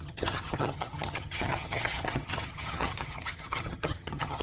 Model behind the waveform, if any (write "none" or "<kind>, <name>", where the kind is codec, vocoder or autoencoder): vocoder, HiFi-GAN